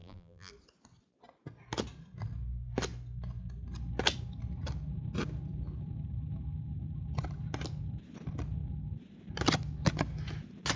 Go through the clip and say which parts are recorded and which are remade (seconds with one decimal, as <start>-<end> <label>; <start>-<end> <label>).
0.0-0.5 remade; 0.5-10.8 recorded